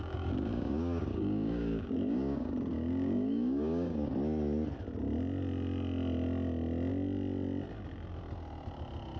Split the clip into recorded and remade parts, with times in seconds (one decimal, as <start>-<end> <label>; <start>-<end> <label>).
0.0-4.1 remade; 4.1-9.2 recorded